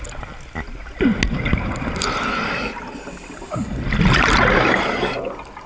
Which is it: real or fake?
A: real